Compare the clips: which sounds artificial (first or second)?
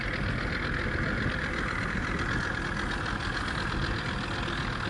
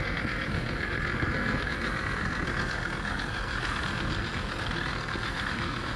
second